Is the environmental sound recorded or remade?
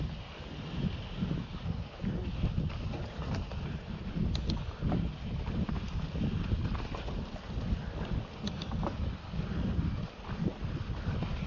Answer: recorded